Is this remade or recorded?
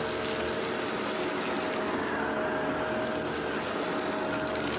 recorded